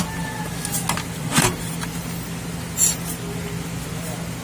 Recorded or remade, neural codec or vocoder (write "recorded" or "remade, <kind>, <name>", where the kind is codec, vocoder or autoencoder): recorded